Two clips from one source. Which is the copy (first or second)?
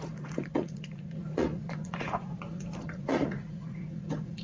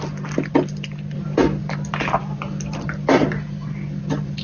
first